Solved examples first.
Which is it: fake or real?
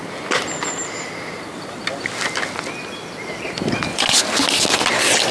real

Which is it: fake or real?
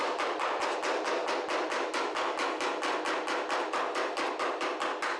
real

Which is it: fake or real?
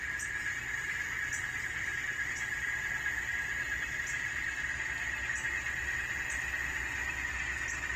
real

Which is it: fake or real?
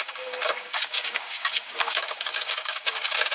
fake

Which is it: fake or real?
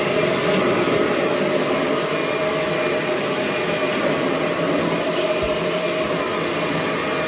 real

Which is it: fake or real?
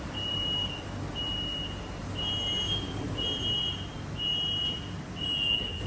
real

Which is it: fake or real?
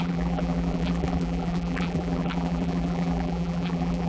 fake